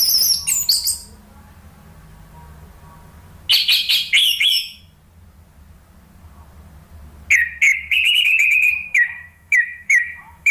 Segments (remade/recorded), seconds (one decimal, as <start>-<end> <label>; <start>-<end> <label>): 0.0-4.2 recorded; 4.2-4.8 remade; 4.8-7.7 recorded; 7.7-10.5 remade